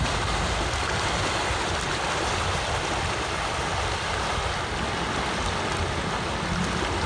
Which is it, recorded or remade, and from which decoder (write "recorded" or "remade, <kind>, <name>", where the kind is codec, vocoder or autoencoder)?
recorded